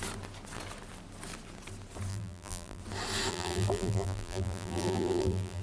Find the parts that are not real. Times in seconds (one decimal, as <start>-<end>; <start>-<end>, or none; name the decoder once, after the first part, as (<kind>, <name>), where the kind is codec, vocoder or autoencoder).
2.1-2.8 (vocoder, BigVGAN v2); 3.3-5.6